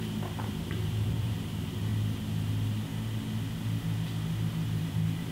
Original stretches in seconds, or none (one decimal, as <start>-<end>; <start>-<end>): 1.9-4.8